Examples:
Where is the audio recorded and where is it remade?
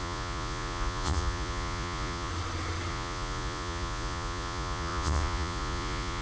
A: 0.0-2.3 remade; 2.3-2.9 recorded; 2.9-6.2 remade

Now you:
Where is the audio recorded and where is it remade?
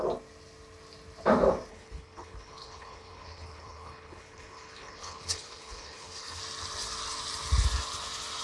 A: 0.0-1.7 recorded; 1.7-6.4 remade; 6.4-8.4 recorded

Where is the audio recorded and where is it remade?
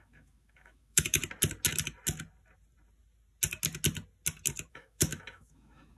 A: 0.0-1.2 remade; 1.2-4.7 recorded; 4.7-6.0 remade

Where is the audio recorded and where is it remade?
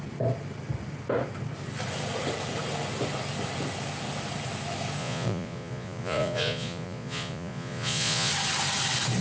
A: 0.0-5.0 recorded; 5.0-8.3 remade; 8.3-9.2 recorded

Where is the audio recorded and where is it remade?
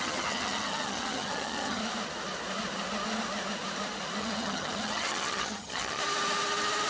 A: 0.0-1.8 remade; 1.8-4.2 recorded; 4.2-6.0 remade; 6.0-6.9 recorded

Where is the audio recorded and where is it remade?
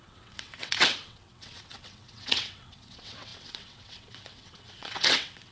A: 0.0-5.5 remade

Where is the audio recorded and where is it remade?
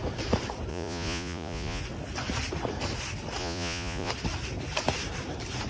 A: 0.0-0.7 recorded; 0.7-1.8 remade; 1.8-3.4 recorded; 3.4-4.1 remade; 4.1-5.7 recorded